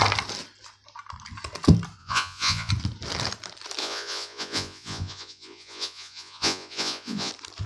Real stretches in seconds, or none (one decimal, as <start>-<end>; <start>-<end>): 0.0-2.0; 2.7-3.8; 7.3-7.7